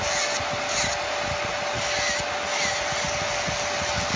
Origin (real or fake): real